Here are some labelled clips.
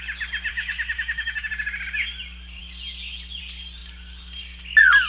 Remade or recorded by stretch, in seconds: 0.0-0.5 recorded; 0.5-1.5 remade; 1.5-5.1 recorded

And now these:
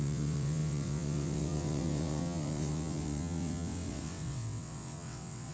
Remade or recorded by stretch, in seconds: 0.0-5.5 remade

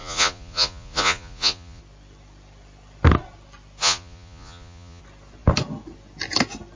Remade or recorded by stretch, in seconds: 0.0-1.8 remade; 1.8-3.8 recorded; 3.8-5.0 remade; 5.0-6.8 recorded

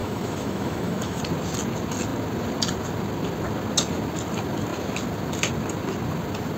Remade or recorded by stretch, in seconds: 0.0-1.2 remade; 1.2-6.6 recorded

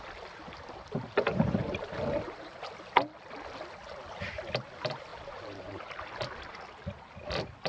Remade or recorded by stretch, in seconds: 0.0-1.3 recorded; 1.3-2.7 remade; 2.7-5.1 recorded; 5.1-6.0 remade; 6.0-7.7 recorded